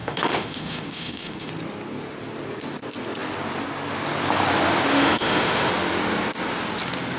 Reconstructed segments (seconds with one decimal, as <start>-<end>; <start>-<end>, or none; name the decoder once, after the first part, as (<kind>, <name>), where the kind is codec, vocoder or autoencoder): 0.0-1.5 (autoencoder, DAC-VAE); 4.9-5.7